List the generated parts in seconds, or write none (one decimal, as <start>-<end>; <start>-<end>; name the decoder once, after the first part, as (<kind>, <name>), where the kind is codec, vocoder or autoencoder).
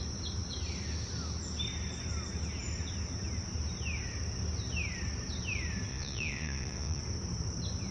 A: 5.9-7.0 (vocoder, Vocos)